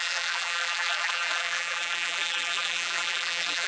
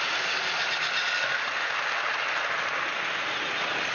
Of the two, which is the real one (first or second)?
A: second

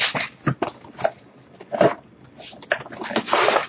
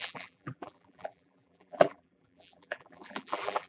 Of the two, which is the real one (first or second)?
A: first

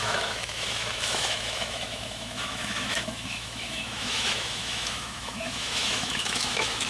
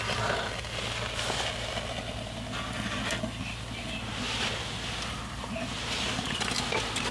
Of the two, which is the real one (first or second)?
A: second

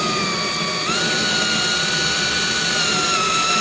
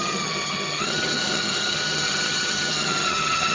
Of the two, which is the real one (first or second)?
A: first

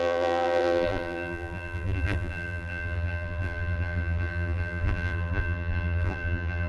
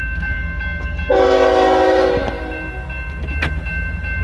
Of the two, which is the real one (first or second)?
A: second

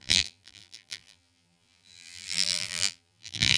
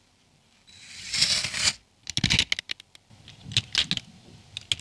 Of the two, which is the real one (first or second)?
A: second